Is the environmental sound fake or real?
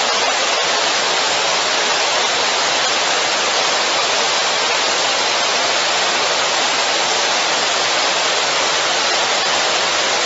real